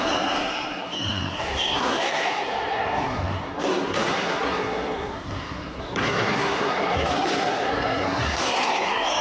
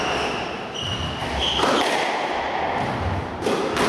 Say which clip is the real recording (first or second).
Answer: second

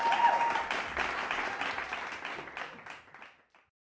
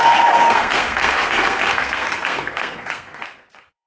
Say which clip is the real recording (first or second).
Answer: first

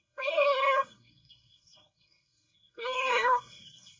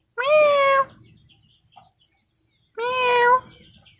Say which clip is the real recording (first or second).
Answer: second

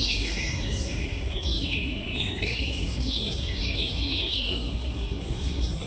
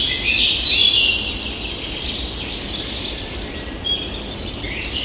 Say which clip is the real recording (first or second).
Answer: second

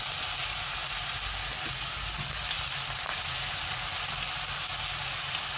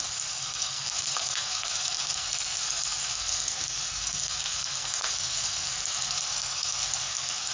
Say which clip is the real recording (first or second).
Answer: first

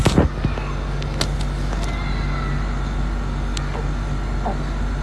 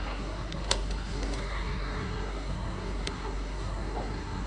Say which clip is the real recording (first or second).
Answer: first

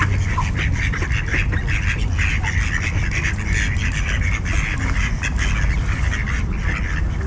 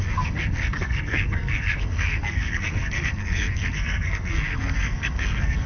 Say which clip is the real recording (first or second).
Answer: first